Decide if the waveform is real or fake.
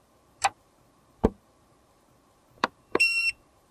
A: fake